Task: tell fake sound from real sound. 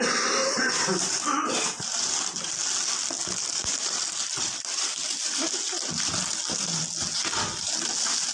real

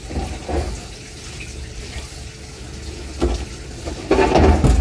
real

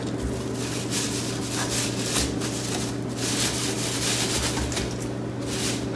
real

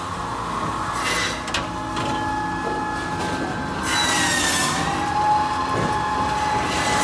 real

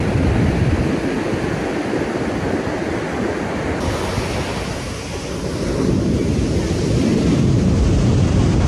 real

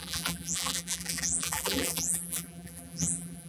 fake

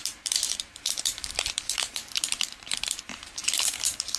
fake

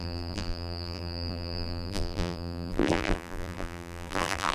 fake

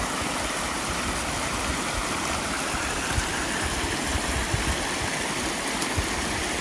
real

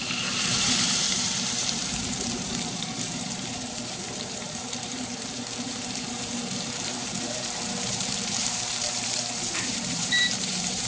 fake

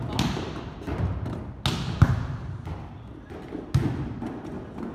real